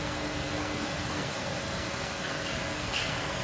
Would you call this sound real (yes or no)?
no